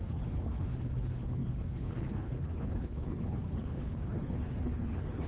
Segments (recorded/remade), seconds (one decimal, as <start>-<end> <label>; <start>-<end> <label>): 0.0-5.3 remade